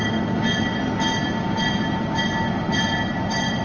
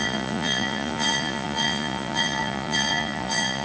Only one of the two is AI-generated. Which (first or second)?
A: second